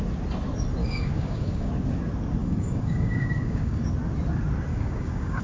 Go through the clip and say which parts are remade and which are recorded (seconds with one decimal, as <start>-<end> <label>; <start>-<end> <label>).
0.0-0.8 recorded; 0.8-1.7 remade; 1.7-2.4 recorded; 2.4-3.9 remade; 3.9-4.7 recorded; 4.7-5.4 remade